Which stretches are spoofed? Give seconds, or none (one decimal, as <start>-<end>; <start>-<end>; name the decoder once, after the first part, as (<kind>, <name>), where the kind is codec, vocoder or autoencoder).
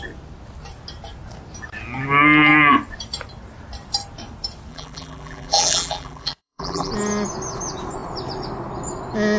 4.7-6.9 (vocoder, BigVGAN v2)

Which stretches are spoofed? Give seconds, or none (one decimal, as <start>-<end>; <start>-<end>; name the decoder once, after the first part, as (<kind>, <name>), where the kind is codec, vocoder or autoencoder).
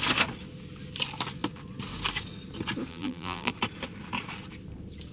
2.9-3.5 (vocoder, BigVGAN v2)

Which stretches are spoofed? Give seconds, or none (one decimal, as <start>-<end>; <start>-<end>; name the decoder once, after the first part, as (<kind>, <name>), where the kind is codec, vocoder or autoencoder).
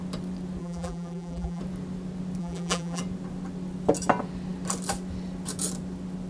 0.6-1.6 (vocoder, BigVGAN v2); 2.4-3.0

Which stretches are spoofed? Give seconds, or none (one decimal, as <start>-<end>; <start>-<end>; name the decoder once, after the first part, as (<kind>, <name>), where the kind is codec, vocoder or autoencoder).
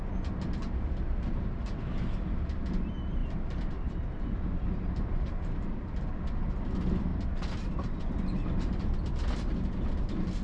3.2-6.0 (vocoder, BigVGAN v2); 7.1-8.0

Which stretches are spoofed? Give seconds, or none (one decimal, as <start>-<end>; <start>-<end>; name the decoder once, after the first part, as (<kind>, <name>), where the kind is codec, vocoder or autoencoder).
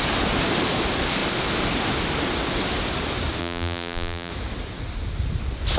3.4-4.3 (vocoder, BigVGAN v2)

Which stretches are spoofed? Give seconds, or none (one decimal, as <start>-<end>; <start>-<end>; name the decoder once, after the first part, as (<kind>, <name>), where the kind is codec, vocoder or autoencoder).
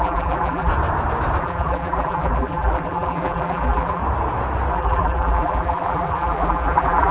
0.0-0.7 (vocoder, BigVGAN v2); 1.4-4.0; 4.7-7.1